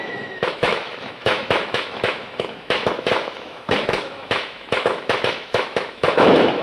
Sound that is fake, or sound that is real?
fake